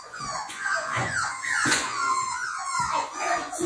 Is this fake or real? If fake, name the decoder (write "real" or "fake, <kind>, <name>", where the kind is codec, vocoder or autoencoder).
fake, vocoder, Vocos